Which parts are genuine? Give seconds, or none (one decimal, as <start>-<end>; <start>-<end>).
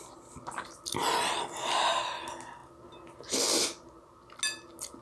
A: 0.0-5.0